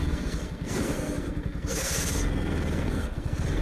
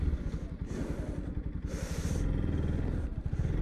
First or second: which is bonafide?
second